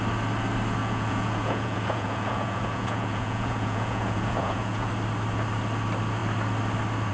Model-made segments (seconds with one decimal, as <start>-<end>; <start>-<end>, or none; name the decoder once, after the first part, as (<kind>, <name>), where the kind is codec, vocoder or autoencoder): 0.8-4.9 (vocoder, Vocos)